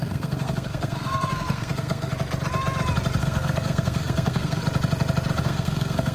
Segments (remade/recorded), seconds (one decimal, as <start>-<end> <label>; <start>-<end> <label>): 0.0-2.1 remade; 2.1-3.2 recorded; 3.2-4.6 remade; 4.6-5.4 recorded; 5.4-6.1 remade